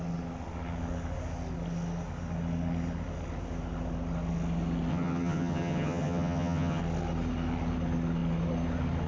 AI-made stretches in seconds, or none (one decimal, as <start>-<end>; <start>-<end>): 4.9-6.8